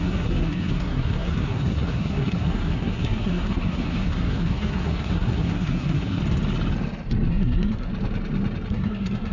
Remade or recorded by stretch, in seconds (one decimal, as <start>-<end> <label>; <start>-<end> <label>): 0.0-6.2 remade; 6.2-7.3 recorded; 7.3-7.9 remade; 7.9-8.7 recorded; 8.7-9.3 remade